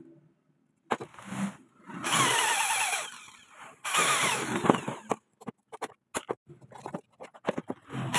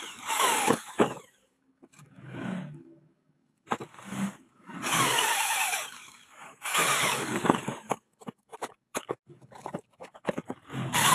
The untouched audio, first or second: first